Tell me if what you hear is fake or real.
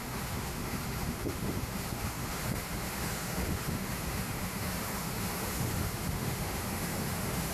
fake